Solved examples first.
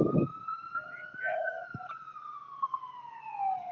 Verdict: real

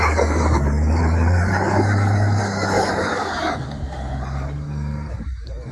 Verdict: fake